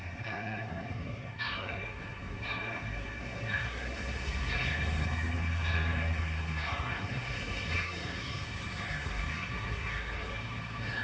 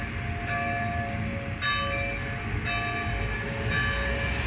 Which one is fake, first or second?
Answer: first